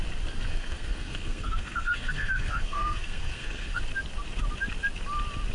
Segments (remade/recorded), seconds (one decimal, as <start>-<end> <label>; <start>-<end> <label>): 0.0-0.5 recorded; 0.5-3.8 remade; 3.8-5.5 recorded